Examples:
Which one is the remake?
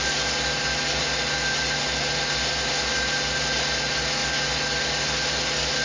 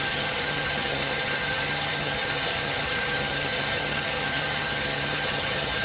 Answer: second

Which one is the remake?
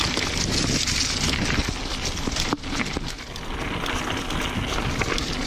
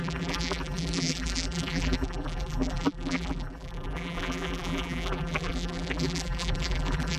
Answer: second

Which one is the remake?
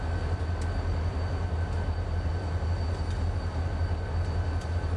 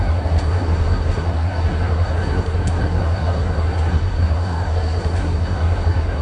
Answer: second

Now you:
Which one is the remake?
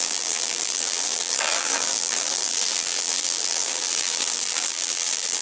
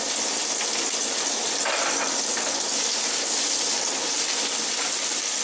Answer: first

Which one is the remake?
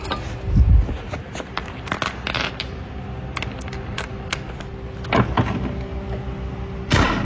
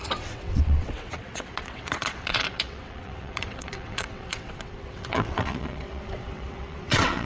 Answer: second